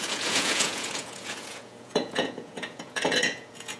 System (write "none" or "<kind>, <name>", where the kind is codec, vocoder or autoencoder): vocoder, Vocos